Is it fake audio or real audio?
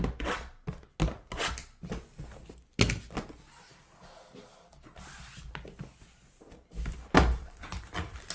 real